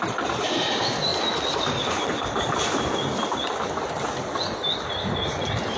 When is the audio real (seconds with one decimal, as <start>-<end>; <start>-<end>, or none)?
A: 0.0-5.8